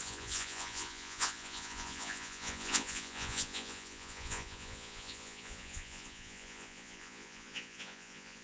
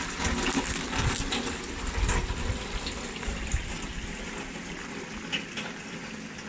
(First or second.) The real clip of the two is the second